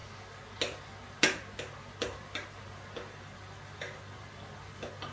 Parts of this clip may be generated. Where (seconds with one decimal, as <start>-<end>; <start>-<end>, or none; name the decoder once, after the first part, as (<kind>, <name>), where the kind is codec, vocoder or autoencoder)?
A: none